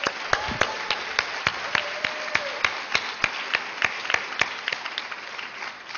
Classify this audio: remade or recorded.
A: recorded